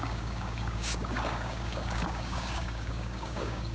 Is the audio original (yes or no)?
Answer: no